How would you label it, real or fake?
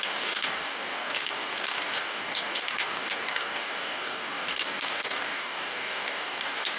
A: fake